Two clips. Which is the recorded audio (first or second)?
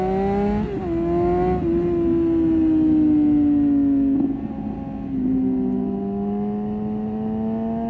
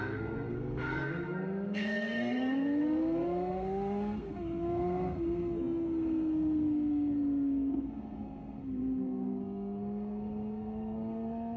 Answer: first